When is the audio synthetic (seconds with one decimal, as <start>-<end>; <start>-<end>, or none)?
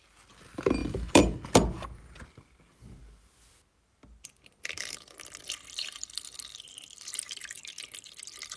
0.8-1.5; 3.8-5.4; 6.0-8.6